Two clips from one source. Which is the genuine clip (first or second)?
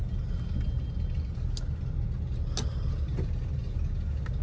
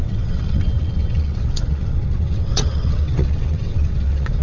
first